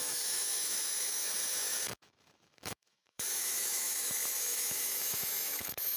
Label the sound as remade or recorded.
remade